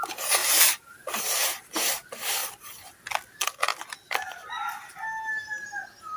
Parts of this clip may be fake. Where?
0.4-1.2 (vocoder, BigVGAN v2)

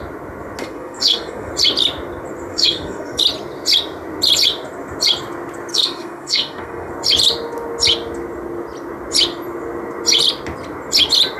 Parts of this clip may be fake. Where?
0.6-1.5 (codec, SNAC); 2.5-3.2; 5.7-6.9

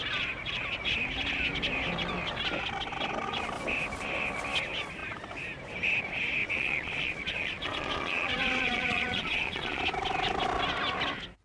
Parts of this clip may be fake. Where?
6.4-9.8 (vocoder, Vocos)

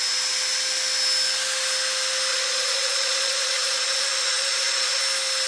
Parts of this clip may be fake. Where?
2.3-5.0 (vocoder, Vocos)

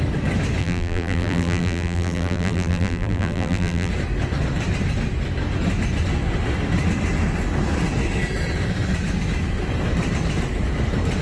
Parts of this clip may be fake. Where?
0.6-3.9 (vocoder, BigVGAN v2)

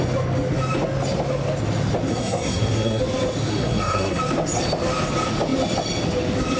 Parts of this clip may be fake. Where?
2.1-3.0 (codec, SNAC); 3.5-4.2